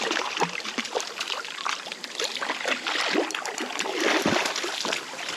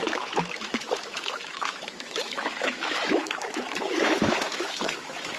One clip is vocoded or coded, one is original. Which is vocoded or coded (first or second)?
second